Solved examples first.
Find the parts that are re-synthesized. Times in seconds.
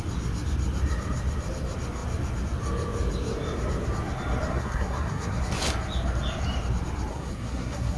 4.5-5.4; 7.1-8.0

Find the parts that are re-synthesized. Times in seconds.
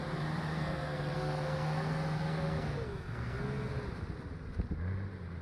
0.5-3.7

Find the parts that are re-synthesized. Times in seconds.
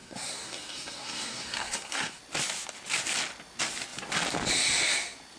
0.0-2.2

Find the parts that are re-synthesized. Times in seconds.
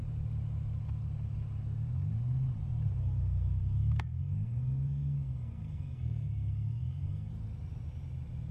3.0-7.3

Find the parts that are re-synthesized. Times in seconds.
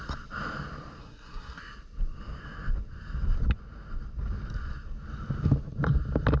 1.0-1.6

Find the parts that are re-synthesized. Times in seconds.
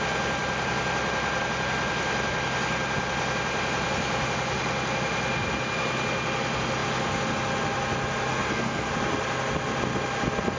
8.3-8.9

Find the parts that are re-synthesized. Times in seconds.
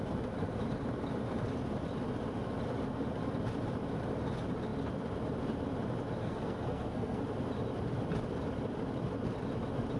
6.2-7.2